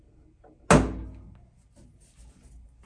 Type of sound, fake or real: real